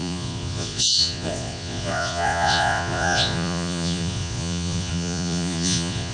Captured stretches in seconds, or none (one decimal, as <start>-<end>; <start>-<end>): none